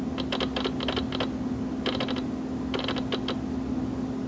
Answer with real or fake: real